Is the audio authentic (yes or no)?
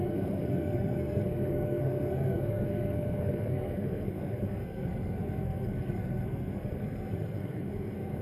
no